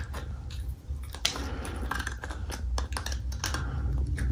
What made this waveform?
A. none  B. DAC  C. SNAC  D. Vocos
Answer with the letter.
A